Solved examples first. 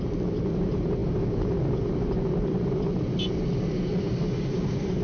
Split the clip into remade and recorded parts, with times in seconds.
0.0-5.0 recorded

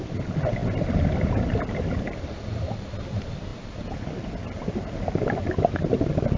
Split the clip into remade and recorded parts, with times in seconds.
0.0-6.4 recorded

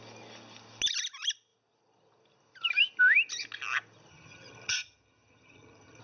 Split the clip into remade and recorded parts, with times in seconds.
0.0-4.1 recorded; 4.1-6.0 remade

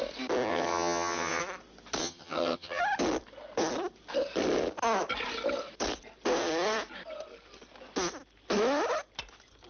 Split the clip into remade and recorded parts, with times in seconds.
0.0-0.5 recorded; 0.5-1.4 remade; 1.4-2.0 recorded; 2.0-2.8 remade; 2.8-9.7 recorded

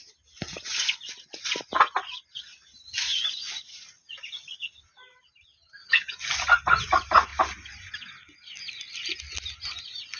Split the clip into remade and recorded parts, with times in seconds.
0.0-10.2 recorded

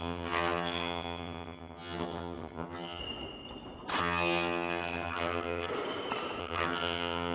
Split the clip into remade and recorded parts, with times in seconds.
0.0-3.0 remade; 3.0-4.0 recorded; 4.0-5.7 remade; 5.7-6.4 recorded; 6.4-7.3 remade

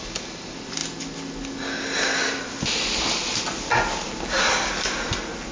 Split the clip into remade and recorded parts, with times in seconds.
0.0-5.5 recorded